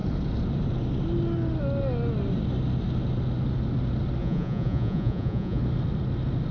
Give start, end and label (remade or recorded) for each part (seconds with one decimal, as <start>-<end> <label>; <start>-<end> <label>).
0.0-4.2 recorded; 4.2-5.6 remade; 5.6-6.5 recorded